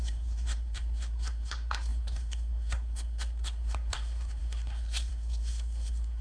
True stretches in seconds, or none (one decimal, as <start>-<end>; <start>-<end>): none